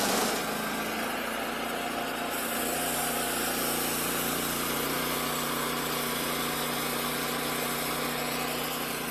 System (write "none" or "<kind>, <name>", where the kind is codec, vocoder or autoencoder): none